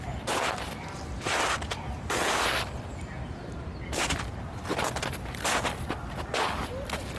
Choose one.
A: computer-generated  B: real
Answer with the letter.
B